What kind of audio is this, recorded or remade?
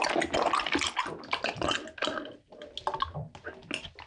recorded